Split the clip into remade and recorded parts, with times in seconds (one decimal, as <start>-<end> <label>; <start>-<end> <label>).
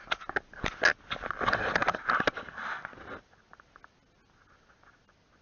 0.0-5.4 recorded